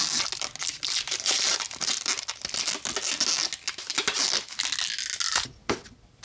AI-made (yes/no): no